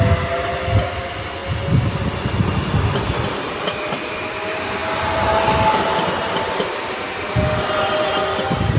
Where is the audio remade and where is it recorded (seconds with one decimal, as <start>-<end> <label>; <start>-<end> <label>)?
0.0-8.8 recorded